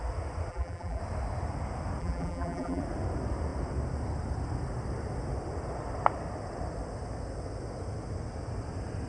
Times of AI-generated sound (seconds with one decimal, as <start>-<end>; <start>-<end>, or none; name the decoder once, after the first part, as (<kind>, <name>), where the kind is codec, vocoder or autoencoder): 0.5-1.0 (vocoder, BigVGAN v2); 2.0-2.8